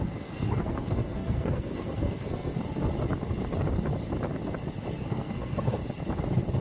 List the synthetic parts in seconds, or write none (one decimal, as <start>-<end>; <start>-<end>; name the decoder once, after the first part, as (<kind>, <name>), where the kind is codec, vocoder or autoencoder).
0.0-2.6 (codec, SNAC); 5.0-5.8